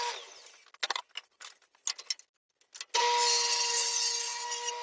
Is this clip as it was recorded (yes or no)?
yes